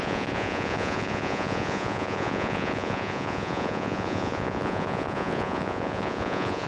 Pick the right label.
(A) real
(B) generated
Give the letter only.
B